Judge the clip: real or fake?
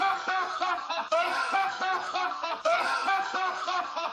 fake